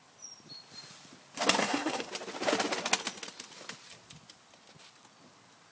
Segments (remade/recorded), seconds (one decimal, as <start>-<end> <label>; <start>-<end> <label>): 0.0-1.6 recorded; 1.6-2.1 remade; 2.1-5.7 recorded